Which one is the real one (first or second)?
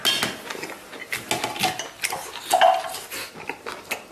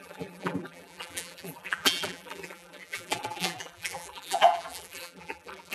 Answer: first